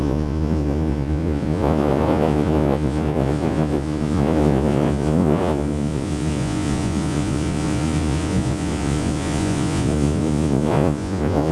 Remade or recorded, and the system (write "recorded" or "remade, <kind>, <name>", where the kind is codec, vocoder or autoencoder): remade, vocoder, Vocos